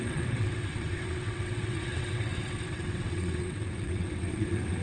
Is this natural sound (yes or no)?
no